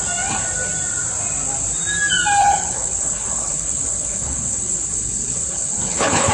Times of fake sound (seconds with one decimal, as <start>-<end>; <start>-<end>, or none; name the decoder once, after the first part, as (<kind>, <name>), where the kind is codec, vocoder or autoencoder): 2.4-6.3 (codec, HILCodec)